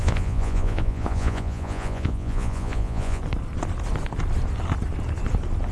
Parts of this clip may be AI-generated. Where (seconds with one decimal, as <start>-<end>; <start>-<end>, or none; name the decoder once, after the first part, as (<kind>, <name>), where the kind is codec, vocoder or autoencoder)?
0.0-3.2 (vocoder, Vocos)